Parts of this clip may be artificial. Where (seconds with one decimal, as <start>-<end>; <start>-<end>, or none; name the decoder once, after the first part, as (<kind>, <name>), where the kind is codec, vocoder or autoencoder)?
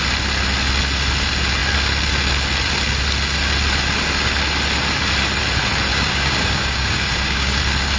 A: 5.9-7.6 (codec, DAC)